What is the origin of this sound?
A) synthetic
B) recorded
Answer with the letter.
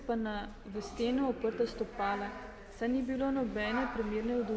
B